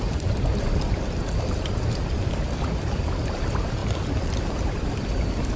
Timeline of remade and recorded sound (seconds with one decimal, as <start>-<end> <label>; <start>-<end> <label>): 0.0-3.8 recorded; 3.8-4.5 remade; 4.5-5.6 recorded